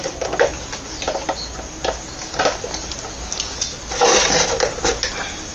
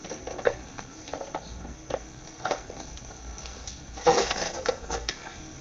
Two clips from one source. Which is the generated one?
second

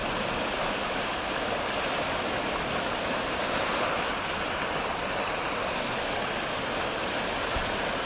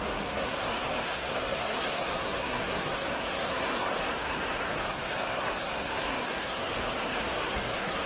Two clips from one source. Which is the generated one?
second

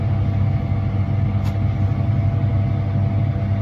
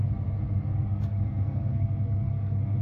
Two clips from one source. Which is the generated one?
second